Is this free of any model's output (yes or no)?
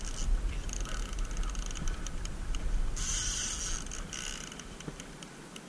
yes